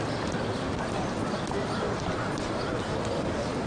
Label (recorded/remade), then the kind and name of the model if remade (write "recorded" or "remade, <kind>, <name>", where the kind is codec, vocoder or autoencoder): recorded